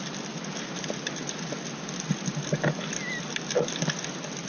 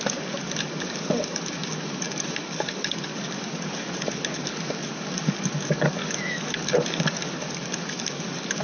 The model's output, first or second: second